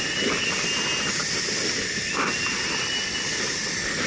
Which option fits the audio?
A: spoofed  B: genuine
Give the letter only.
B